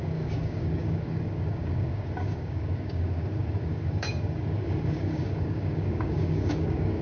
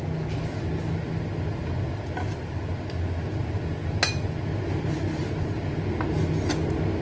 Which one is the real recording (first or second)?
second